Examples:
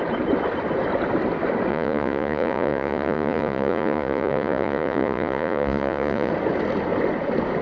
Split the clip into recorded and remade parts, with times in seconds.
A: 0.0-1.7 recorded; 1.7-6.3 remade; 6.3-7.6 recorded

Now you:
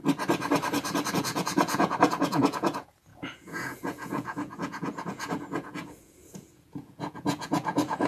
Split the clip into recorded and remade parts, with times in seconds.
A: 0.0-1.1 recorded; 1.1-8.1 remade

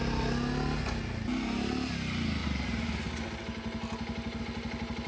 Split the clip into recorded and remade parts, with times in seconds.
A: 0.0-5.1 recorded

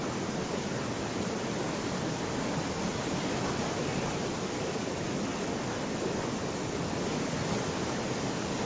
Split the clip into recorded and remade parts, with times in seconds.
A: 0.0-8.7 recorded

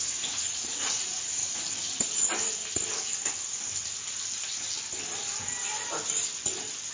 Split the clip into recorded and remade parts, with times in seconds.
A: 0.0-1.4 remade; 1.4-2.2 recorded; 2.2-2.6 remade; 2.6-6.9 recorded

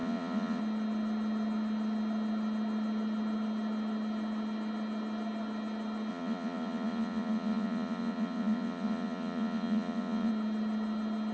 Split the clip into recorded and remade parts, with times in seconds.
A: 0.0-0.6 remade; 0.6-6.1 recorded; 6.1-10.3 remade; 10.3-11.3 recorded

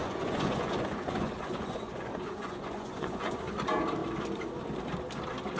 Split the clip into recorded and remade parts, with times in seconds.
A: 0.0-3.4 remade; 3.4-5.6 recorded

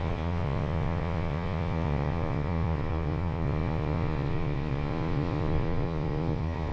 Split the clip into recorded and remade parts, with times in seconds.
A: 0.0-6.7 remade